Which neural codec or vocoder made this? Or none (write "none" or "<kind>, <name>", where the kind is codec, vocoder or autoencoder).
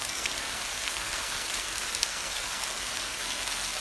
codec, SNAC